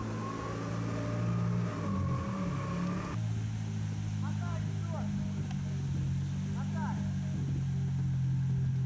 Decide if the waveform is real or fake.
real